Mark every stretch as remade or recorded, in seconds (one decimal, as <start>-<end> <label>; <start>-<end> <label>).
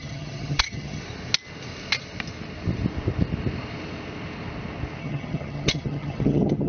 0.0-1.0 remade; 1.0-5.0 recorded; 5.0-6.7 remade